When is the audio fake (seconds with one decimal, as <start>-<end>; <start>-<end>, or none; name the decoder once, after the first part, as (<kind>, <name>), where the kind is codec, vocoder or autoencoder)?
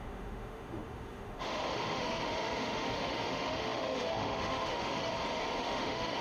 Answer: 0.0-5.1 (autoencoder, DAC-VAE); 5.6-6.2